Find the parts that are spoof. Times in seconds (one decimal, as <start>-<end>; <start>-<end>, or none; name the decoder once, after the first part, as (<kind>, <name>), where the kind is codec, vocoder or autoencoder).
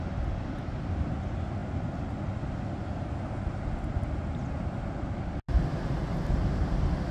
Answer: none